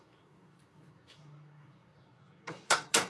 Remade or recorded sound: remade